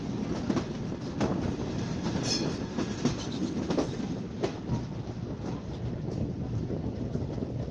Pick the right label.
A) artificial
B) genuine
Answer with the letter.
B